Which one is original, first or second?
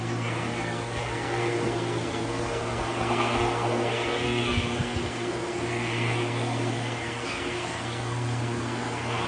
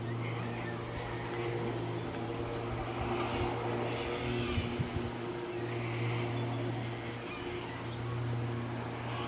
second